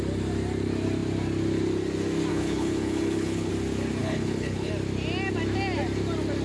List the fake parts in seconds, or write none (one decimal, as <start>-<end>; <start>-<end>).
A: 2.3-3.5; 4.0-4.7